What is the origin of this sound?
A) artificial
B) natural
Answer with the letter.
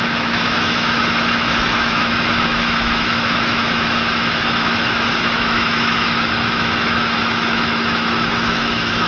A